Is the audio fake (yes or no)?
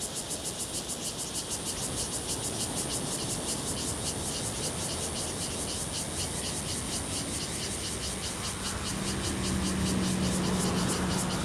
no